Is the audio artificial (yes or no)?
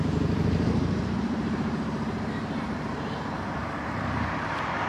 yes